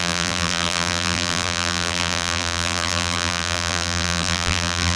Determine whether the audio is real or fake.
fake